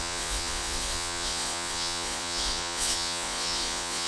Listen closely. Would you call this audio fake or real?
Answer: fake